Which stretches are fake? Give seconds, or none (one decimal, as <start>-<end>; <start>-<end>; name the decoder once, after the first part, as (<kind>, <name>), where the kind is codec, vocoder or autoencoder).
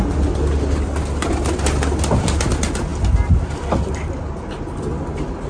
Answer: none